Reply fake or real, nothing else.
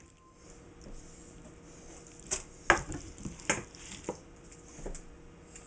real